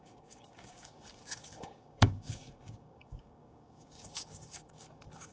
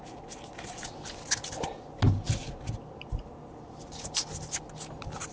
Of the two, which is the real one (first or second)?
second